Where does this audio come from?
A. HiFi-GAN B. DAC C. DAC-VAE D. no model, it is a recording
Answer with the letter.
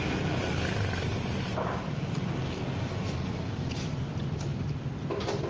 D